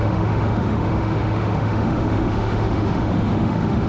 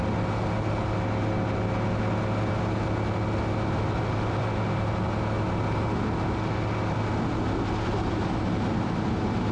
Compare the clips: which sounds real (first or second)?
second